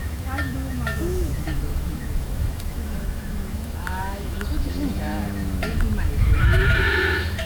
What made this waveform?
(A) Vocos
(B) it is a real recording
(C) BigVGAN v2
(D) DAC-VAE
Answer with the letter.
D